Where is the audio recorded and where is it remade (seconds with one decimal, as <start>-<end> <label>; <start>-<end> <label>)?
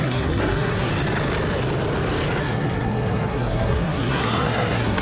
0.0-0.9 remade; 0.9-2.4 recorded; 2.4-5.0 remade